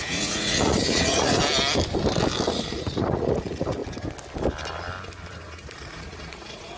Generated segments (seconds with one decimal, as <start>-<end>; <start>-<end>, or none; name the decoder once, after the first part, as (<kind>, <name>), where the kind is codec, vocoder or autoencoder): 0.0-1.4 (vocoder, Vocos); 2.5-3.8; 5.3-6.8